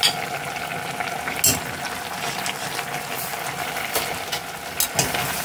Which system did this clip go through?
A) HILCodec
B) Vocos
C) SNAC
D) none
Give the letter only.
D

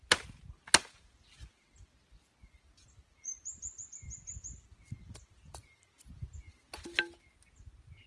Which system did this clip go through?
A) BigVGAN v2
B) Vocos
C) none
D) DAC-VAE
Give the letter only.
C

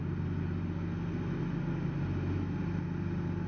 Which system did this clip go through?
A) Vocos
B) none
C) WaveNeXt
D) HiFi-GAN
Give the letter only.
B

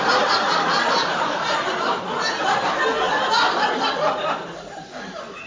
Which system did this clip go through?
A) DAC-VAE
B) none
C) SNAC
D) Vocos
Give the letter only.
B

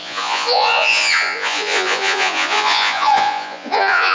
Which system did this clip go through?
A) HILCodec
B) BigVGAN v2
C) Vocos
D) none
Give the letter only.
C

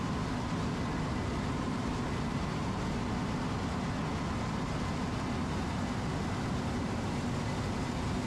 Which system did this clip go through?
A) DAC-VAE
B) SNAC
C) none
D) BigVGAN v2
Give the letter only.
C